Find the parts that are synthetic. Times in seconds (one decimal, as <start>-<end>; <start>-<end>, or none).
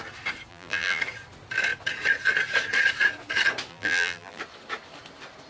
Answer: 0.5-1.0; 3.7-4.4